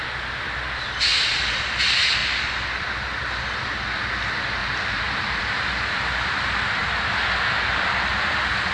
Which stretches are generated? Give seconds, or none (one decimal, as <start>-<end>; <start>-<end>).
1.1-1.8; 4.6-5.4